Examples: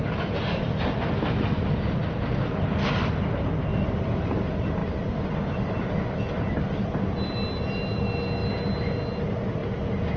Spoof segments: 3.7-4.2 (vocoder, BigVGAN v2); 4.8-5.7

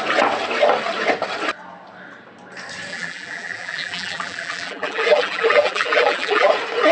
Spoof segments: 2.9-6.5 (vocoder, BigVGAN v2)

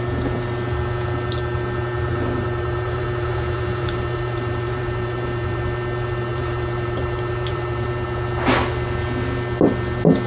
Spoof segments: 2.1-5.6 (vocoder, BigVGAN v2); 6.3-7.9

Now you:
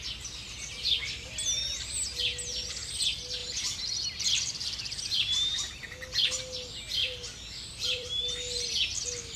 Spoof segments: 3.4-5.7 (vocoder, BigVGAN v2); 7.0-8.7

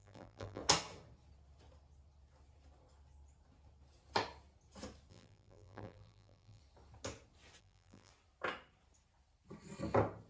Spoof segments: 0.0-0.6 (vocoder, BigVGAN v2); 5.1-6.6; 7.6-8.1

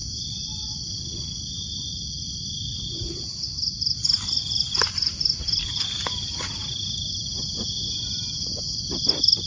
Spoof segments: 0.0-1.5 (vocoder, BigVGAN v2)

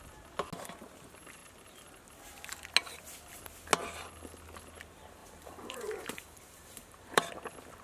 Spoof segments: 5.2-7.2 (vocoder, BigVGAN v2)